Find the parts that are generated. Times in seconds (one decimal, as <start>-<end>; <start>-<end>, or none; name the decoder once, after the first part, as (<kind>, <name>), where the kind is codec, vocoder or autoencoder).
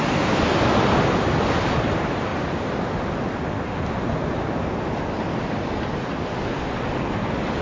none